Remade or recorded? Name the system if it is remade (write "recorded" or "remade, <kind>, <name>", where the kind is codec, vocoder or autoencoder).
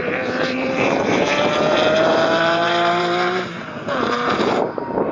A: remade, vocoder, BigVGAN v2